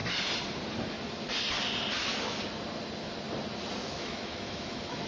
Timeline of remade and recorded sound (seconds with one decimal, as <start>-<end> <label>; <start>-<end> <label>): 0.0-3.8 recorded; 3.8-5.1 remade